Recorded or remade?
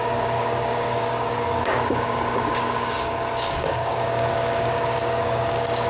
remade